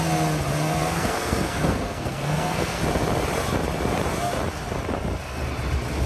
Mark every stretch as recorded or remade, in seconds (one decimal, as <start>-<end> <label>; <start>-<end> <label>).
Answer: 0.0-0.8 recorded; 0.8-2.8 remade; 2.8-6.1 recorded